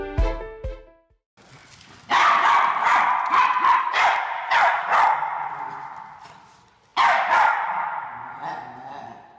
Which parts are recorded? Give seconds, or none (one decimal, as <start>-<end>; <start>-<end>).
0.0-9.4